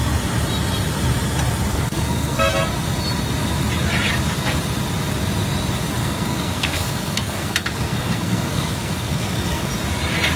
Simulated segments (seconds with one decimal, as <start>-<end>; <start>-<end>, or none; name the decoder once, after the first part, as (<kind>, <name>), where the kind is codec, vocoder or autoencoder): 1.7-2.5 (codec, SNAC); 6.0-9.7